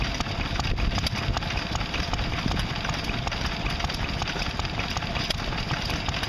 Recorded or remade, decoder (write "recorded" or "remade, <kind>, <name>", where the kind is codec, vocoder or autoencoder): recorded